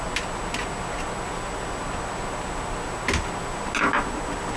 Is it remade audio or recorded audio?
recorded